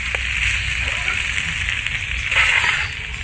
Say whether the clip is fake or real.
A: real